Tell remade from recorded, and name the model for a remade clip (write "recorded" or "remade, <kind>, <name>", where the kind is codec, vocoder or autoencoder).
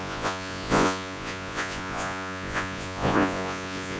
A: remade, vocoder, Vocos